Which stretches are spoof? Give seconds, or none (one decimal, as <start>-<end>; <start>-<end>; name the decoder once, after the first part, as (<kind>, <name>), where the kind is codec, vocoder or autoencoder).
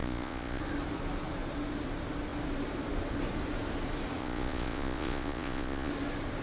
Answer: 0.0-0.6 (vocoder, Vocos); 4.2-5.9